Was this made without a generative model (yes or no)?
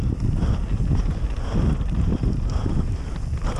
yes